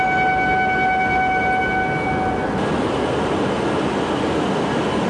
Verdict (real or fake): real